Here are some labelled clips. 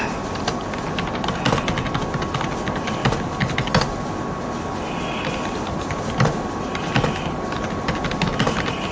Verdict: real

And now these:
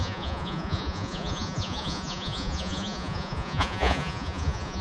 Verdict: fake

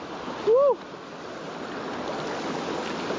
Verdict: real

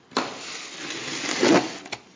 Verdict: real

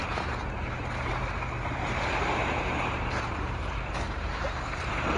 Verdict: fake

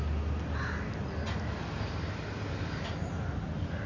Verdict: real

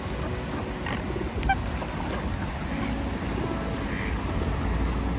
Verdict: real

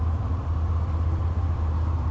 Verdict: fake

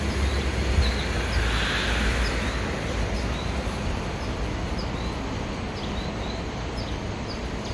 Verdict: real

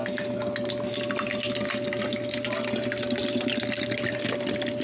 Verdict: real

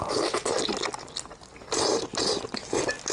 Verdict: real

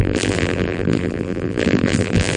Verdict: fake